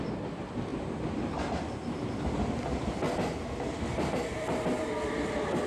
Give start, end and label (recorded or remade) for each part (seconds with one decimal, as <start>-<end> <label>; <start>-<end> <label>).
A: 0.0-0.7 remade; 0.7-4.1 recorded; 4.1-5.7 remade